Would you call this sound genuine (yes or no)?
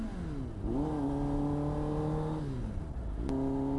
yes